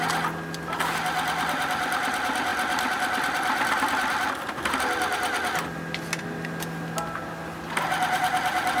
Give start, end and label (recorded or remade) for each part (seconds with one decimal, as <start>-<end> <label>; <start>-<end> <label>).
0.0-8.8 recorded